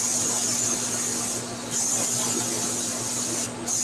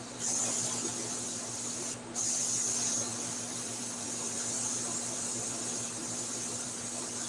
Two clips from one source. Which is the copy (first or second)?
second